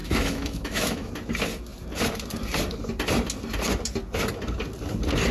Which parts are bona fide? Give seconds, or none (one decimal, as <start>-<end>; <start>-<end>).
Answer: 1.1-5.3